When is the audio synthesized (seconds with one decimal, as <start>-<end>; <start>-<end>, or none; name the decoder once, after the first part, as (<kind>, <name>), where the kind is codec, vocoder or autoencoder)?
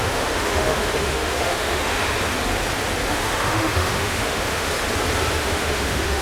0.0-2.0 (autoencoder, DAC-VAE); 3.1-4.7; 5.4-6.2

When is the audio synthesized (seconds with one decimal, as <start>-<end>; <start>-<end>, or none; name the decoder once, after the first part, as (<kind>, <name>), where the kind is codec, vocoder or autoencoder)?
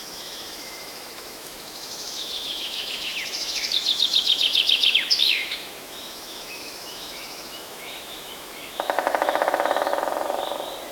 0.0-9.9 (autoencoder, DAC-VAE)